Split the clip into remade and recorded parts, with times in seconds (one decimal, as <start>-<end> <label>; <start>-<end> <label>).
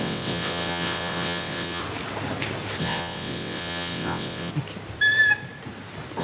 0.0-1.8 remade; 1.8-2.8 recorded; 2.8-4.5 remade; 4.5-6.2 recorded